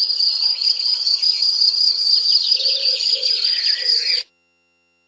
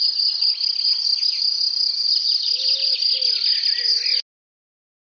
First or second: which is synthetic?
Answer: first